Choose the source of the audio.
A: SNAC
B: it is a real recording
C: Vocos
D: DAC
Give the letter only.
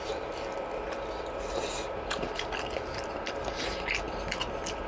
B